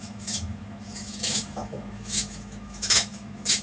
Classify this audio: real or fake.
fake